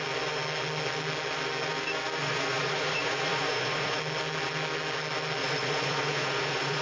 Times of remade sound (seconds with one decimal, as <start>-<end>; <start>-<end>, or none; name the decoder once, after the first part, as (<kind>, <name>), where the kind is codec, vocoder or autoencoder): 2.2-4.0 (vocoder, Vocos); 5.4-6.8